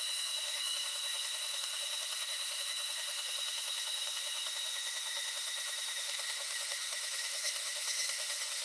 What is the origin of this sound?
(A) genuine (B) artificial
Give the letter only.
B